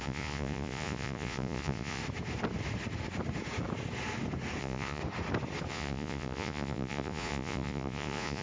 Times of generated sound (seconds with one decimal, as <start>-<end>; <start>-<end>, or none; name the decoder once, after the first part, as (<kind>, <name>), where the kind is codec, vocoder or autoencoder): 0.0-2.0 (vocoder, Vocos); 4.6-5.0; 5.7-8.4